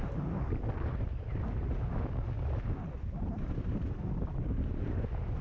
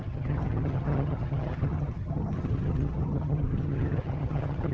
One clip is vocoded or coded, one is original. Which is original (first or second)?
first